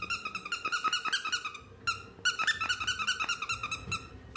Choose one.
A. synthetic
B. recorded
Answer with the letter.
B